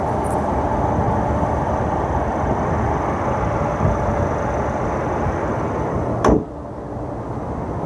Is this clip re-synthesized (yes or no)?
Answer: no